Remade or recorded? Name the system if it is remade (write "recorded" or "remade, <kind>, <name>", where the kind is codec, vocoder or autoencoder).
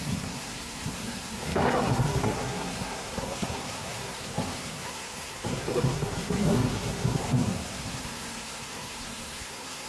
remade, codec, SNAC